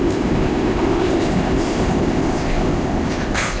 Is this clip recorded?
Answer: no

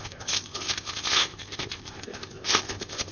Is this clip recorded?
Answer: no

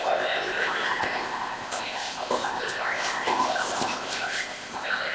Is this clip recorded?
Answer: no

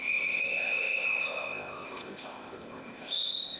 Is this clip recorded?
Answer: no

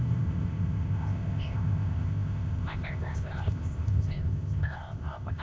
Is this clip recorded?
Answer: no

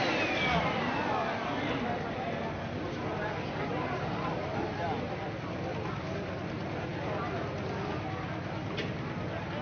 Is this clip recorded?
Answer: yes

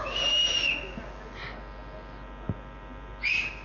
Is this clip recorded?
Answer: yes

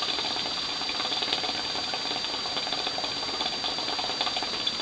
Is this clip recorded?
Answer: yes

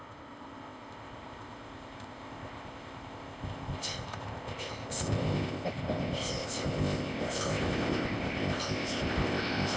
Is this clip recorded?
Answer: no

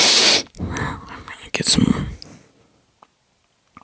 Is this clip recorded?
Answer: yes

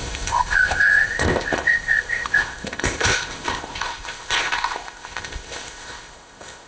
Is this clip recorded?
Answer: no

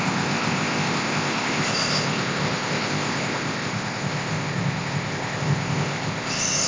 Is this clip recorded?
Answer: no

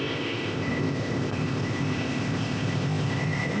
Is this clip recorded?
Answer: no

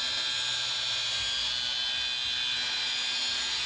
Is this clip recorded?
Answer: yes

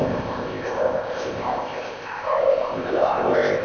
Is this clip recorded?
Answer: no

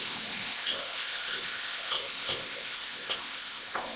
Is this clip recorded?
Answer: no